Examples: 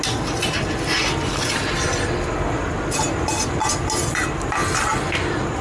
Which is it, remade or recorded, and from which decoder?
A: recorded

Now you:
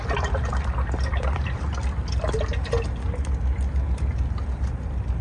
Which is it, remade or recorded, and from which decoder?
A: recorded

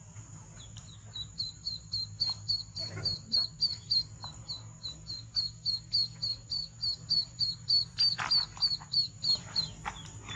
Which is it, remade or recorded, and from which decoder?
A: recorded